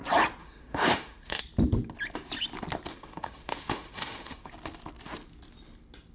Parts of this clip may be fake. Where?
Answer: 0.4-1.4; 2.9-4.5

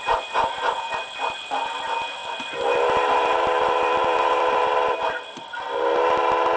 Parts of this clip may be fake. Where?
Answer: 2.2-4.6

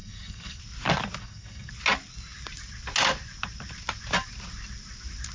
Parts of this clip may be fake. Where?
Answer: 0.0-0.6; 1.2-1.7